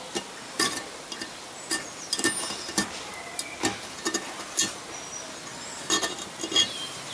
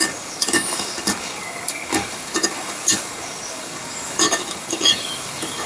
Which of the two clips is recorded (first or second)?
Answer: first